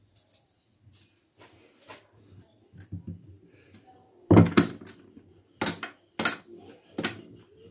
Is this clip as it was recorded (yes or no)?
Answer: yes